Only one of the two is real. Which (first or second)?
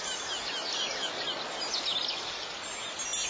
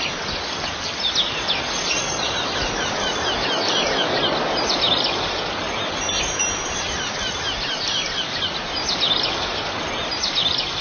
first